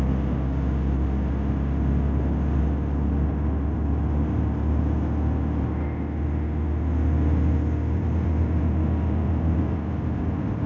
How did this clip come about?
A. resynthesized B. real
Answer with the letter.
B